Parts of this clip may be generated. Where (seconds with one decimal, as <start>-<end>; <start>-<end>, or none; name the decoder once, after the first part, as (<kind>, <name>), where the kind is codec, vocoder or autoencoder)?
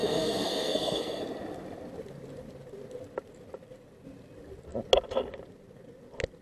0.0-1.2 (codec, SNAC)